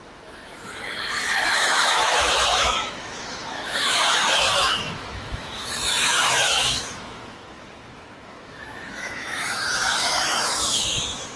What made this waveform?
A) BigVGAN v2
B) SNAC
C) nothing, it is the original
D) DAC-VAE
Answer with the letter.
D